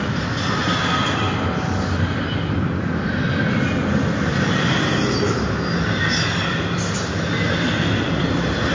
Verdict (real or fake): real